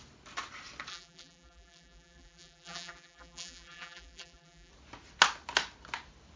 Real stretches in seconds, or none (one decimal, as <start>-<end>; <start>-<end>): 0.0-0.9; 4.7-6.4